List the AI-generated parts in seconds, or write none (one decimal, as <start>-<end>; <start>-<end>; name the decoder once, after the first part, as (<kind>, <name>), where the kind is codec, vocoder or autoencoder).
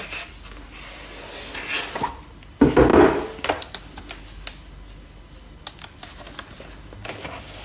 none